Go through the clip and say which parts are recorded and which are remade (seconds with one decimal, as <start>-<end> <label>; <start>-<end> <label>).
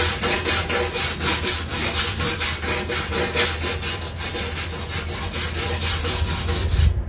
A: 0.0-7.1 recorded